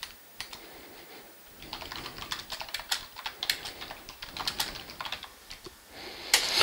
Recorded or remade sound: recorded